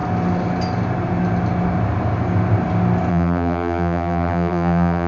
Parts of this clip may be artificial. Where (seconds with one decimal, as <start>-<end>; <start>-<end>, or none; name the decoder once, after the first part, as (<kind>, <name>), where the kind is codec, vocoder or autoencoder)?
3.1-5.1 (vocoder, BigVGAN v2)